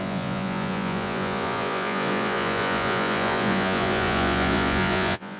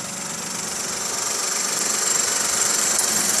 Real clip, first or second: second